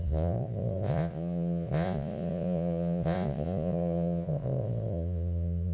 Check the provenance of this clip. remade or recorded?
remade